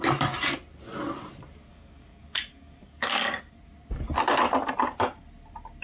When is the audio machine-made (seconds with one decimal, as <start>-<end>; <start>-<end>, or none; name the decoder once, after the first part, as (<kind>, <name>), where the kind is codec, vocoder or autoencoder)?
1.7-3.4 (codec, DAC)